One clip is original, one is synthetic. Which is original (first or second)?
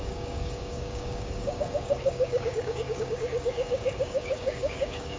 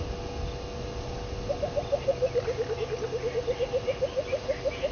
second